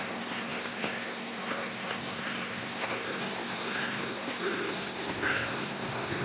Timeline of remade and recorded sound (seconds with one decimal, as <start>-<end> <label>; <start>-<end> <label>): 0.0-6.2 remade